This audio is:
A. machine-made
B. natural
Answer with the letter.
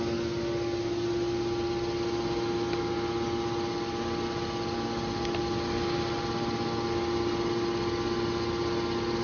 B